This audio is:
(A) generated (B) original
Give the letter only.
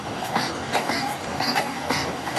A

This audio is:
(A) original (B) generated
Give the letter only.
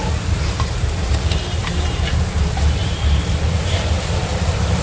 B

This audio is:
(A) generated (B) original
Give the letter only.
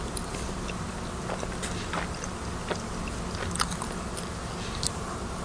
B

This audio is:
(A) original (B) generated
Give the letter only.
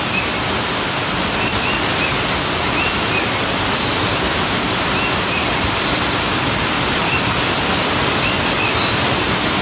A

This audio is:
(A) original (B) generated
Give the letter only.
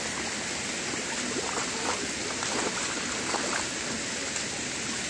A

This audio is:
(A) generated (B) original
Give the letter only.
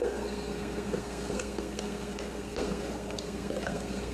A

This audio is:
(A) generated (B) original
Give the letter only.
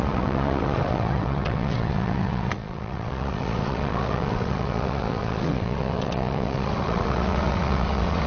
A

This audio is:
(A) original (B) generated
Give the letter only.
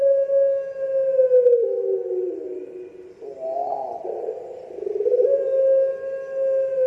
A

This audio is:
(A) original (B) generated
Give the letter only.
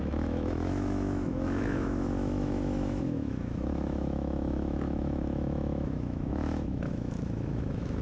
B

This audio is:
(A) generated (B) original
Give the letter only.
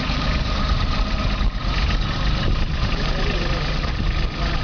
B